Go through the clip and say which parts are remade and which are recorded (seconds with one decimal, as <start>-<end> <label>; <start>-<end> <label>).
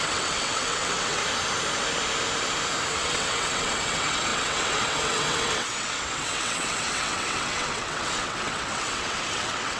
0.0-1.2 remade; 1.2-2.9 recorded; 2.9-9.8 remade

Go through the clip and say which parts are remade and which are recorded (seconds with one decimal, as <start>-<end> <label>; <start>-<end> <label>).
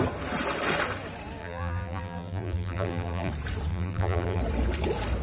0.0-1.4 recorded; 1.4-3.3 remade; 3.3-3.7 recorded; 3.7-4.4 remade; 4.4-5.2 recorded